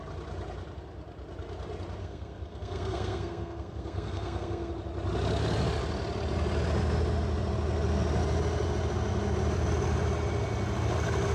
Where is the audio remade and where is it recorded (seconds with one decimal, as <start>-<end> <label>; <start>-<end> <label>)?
0.0-2.0 recorded; 2.0-4.7 remade; 4.7-11.3 recorded

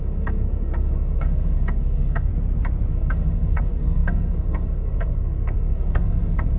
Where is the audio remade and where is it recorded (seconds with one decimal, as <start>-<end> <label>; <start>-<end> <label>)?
0.0-2.3 remade; 2.3-2.9 recorded; 2.9-6.6 remade

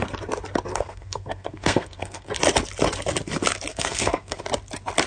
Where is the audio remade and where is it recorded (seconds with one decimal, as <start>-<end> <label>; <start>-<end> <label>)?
0.0-0.7 recorded; 0.7-2.3 remade; 2.3-3.7 recorded; 3.7-4.4 remade; 4.4-5.1 recorded

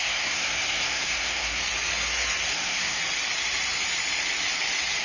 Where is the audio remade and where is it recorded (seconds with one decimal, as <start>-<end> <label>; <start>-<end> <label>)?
0.0-1.6 remade; 1.6-2.5 recorded; 2.5-3.0 remade; 3.0-5.0 recorded

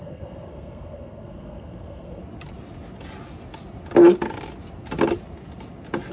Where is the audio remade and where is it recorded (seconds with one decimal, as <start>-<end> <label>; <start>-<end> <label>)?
0.0-2.2 remade; 2.2-6.1 recorded